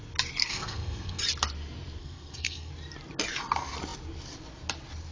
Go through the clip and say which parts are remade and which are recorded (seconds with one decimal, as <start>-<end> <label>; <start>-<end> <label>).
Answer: 0.0-0.5 recorded; 0.5-1.2 remade; 1.2-2.0 recorded; 2.0-2.7 remade; 2.7-5.1 recorded